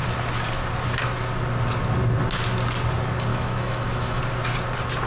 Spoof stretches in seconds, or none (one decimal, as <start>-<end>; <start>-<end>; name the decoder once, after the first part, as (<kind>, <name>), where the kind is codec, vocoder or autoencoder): 3.3-4.2 (autoencoder, DAC-VAE)